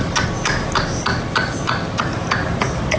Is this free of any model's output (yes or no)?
yes